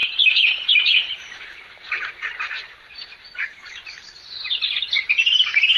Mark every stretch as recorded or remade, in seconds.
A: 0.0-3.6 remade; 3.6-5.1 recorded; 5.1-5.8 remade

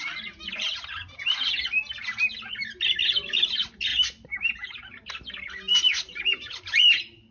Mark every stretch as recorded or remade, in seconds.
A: 0.0-3.9 recorded; 3.9-5.1 remade; 5.1-5.7 recorded; 5.7-6.8 remade; 6.8-7.3 recorded

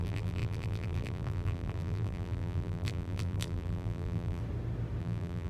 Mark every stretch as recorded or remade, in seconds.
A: 0.0-4.4 remade; 4.4-5.0 recorded; 5.0-5.5 remade